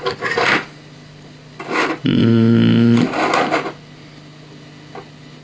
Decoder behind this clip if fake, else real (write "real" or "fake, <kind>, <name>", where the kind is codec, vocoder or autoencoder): real